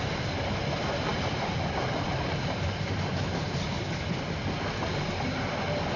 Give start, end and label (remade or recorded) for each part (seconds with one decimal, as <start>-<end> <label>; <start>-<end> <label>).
0.0-6.0 recorded